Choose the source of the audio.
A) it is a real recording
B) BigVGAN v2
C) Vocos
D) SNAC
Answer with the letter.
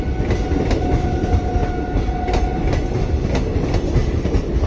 A